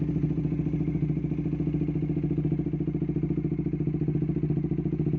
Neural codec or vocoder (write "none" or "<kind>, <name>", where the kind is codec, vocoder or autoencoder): none